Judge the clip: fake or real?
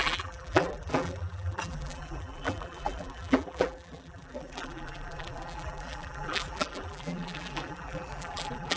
fake